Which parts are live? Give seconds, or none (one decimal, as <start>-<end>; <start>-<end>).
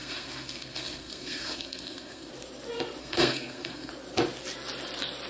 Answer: 2.3-3.0; 3.9-5.3